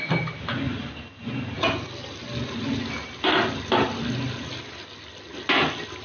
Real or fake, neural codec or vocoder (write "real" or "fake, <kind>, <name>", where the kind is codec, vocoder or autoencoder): real